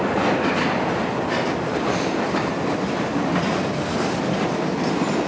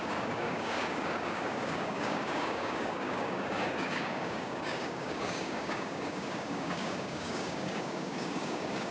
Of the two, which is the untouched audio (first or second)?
first